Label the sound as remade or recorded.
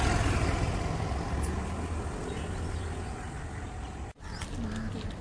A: recorded